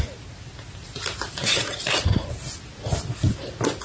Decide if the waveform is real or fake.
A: real